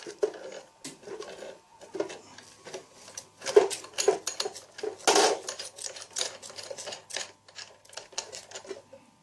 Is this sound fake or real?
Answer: real